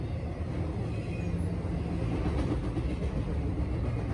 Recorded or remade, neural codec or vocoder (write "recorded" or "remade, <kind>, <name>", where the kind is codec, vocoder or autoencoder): recorded